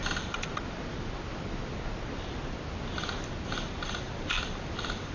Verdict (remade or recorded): recorded